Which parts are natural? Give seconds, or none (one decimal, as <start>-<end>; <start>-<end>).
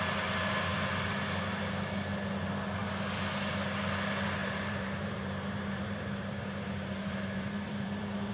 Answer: 0.0-4.4